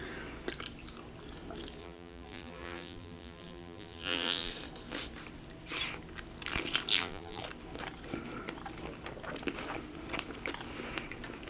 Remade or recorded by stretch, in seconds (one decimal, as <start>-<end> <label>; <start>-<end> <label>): 0.0-1.8 recorded; 1.8-4.5 remade; 4.5-6.9 recorded; 6.9-7.4 remade; 7.4-11.5 recorded